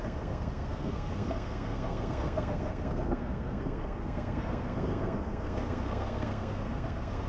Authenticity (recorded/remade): remade